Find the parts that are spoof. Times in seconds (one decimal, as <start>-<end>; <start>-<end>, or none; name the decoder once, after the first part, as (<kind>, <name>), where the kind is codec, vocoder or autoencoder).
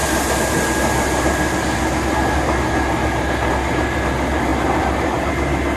3.5-4.5 (vocoder, BigVGAN v2); 5.3-5.8